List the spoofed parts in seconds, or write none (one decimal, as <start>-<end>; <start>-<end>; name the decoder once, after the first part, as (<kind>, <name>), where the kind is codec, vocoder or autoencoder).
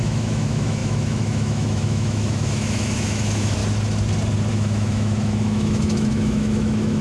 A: 0.0-3.6 (autoencoder, DAC-VAE); 4.5-7.0